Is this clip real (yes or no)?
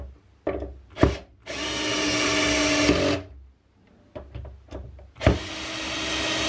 yes